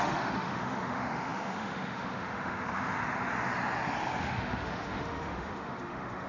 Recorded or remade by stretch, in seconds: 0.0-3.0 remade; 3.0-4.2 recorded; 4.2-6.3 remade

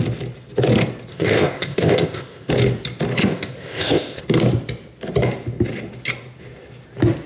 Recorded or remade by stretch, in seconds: 0.0-1.1 recorded; 1.1-2.5 remade; 2.5-3.2 recorded; 3.2-4.2 remade; 4.2-7.3 recorded

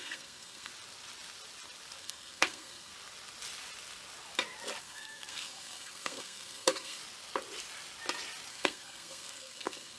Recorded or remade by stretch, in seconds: 0.0-0.7 remade; 0.7-2.0 recorded; 2.0-2.9 remade; 2.9-4.8 recorded; 4.8-7.0 remade; 7.0-8.5 recorded; 8.5-10.0 remade